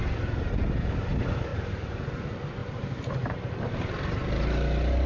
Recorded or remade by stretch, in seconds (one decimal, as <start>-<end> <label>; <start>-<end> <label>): 0.0-1.5 recorded; 1.5-2.0 remade; 2.0-2.6 recorded; 2.6-3.4 remade; 3.4-5.1 recorded